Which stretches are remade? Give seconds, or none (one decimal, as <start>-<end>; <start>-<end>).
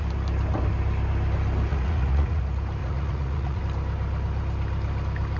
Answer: 1.7-2.4; 2.8-3.6